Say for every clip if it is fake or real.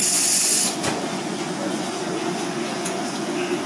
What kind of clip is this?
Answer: fake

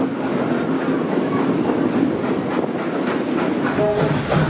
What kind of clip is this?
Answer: real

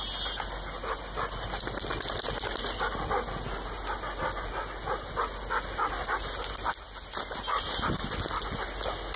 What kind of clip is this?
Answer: real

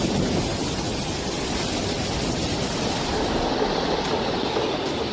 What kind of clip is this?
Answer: real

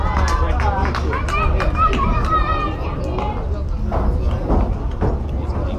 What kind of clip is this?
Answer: real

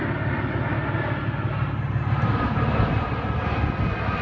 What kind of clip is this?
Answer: real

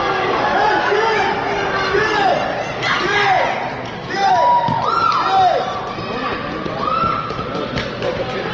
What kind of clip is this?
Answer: real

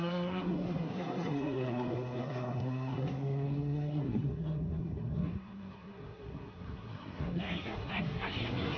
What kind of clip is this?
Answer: fake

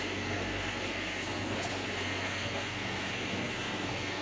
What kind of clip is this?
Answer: fake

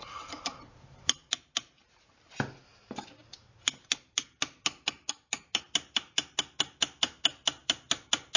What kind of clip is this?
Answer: real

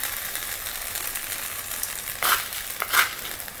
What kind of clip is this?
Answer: fake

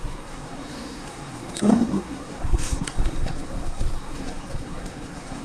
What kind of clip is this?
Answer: fake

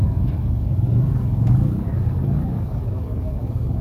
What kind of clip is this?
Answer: fake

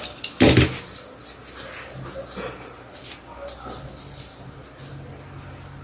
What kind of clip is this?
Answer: real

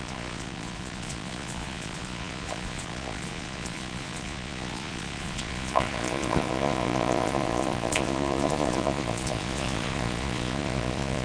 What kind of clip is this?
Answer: fake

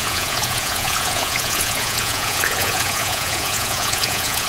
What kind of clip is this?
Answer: fake